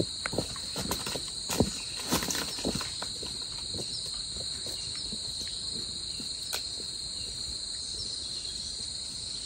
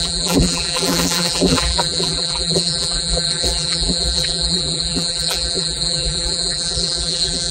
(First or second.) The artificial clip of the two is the second